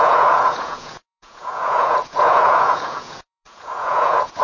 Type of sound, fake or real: fake